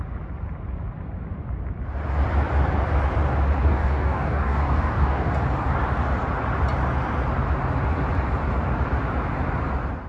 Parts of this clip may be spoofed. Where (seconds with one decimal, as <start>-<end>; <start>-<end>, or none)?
3.6-5.3